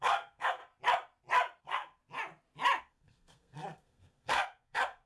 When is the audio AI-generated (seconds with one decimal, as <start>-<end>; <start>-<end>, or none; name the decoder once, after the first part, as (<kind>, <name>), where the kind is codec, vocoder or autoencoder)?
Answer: 0.0-0.6 (codec, SNAC); 1.6-2.0; 2.8-5.1

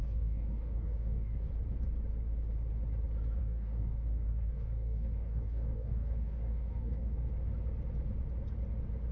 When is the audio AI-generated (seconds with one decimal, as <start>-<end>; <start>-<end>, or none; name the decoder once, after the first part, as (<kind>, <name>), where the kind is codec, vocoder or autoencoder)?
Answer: 0.0-1.5 (codec, DAC); 3.4-7.3

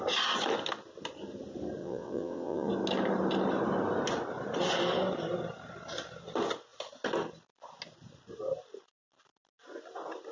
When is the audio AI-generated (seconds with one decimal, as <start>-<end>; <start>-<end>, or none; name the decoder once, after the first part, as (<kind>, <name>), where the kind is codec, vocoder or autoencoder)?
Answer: 1.8-2.7 (vocoder, WaveNeXt)

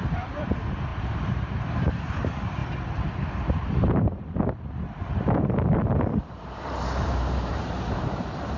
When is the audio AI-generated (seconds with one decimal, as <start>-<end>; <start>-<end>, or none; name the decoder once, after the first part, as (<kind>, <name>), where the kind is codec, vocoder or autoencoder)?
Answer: 0.0-2.6 (vocoder, BigVGAN v2); 3.3-8.6

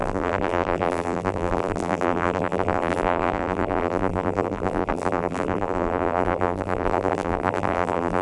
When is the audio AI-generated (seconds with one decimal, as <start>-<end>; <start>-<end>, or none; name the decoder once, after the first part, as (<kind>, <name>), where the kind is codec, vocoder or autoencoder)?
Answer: 0.0-8.2 (vocoder, BigVGAN v2)